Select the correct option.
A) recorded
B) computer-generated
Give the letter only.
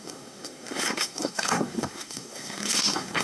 B